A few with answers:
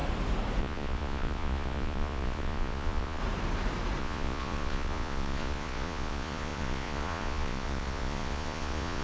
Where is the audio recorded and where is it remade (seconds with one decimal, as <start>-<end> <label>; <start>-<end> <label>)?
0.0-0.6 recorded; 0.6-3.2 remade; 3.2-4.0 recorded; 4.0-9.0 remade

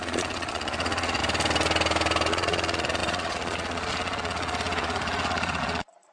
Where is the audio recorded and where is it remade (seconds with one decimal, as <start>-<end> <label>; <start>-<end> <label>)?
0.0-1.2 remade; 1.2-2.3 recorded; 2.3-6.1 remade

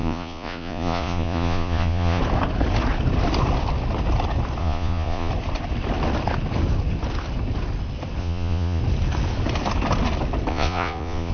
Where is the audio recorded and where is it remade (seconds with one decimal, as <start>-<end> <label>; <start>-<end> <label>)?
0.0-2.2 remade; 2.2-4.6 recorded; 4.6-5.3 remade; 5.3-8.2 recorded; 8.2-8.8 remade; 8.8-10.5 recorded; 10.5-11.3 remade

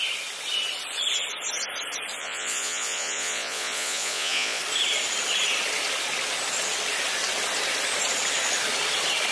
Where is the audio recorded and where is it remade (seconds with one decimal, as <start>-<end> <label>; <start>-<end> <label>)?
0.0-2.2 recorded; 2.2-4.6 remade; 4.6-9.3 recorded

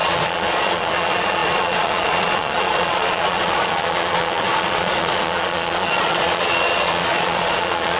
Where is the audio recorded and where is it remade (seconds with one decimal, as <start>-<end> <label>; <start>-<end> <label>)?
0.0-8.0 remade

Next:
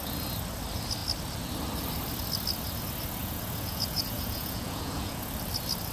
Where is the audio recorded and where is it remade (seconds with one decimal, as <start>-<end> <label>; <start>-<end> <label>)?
0.0-3.2 recorded; 3.2-5.3 remade; 5.3-5.9 recorded